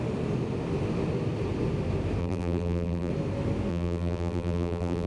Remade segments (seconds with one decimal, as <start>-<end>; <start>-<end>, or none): 2.2-3.1; 3.7-5.1